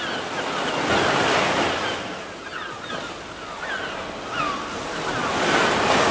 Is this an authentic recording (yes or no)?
yes